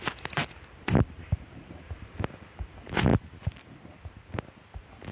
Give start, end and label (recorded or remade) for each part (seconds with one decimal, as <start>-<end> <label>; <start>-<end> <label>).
0.0-3.1 remade; 3.1-5.1 recorded